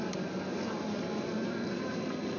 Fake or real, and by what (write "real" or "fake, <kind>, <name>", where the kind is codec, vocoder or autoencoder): real